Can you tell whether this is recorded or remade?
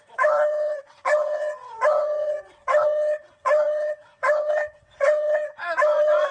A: remade